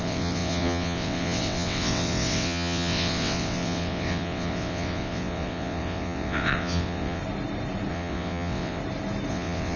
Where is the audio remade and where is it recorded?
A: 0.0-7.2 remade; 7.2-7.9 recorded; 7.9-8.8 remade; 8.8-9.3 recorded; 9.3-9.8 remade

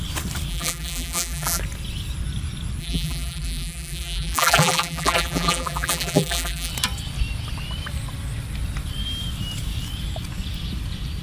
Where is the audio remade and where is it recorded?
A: 0.0-0.5 recorded; 0.5-1.6 remade; 1.6-2.8 recorded; 2.8-6.7 remade; 6.7-11.2 recorded

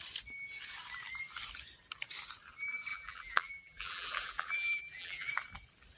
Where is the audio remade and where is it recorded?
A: 0.0-2.9 recorded; 2.9-5.3 remade; 5.3-6.0 recorded

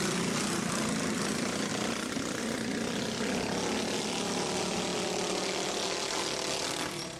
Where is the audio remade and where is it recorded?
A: 0.0-1.7 recorded; 1.7-2.4 remade; 2.4-7.2 recorded